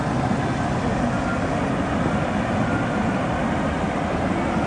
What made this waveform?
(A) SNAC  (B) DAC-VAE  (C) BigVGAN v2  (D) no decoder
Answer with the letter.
D